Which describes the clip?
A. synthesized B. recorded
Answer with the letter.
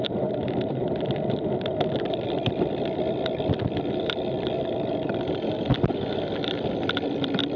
B